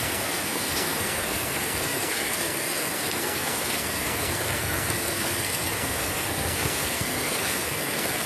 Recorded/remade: remade